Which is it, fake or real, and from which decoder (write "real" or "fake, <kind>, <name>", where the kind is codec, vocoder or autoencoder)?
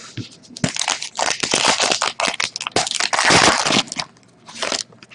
real